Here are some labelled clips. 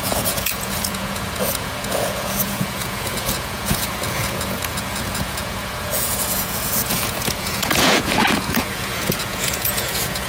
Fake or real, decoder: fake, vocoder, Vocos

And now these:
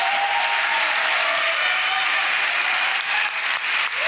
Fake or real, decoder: real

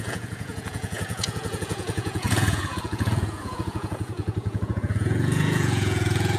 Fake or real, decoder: fake, vocoder, Vocos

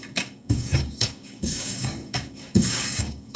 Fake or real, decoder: fake, codec, DAC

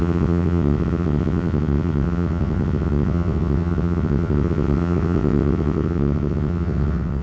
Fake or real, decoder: fake, vocoder, WaveNeXt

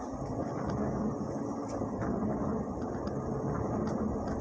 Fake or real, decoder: real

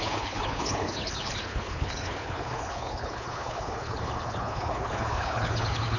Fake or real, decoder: fake, codec, HILCodec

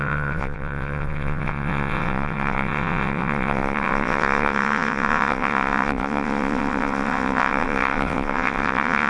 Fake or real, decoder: fake, vocoder, WaveNeXt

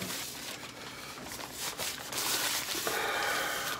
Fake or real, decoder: fake, vocoder, BigVGAN v2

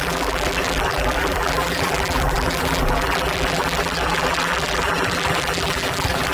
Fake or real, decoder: fake, vocoder, BigVGAN v2